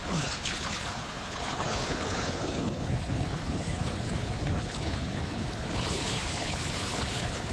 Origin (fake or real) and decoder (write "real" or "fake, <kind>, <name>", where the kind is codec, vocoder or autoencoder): fake, codec, HILCodec